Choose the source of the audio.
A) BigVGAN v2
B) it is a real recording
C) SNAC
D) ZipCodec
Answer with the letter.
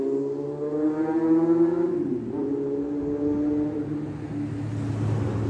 B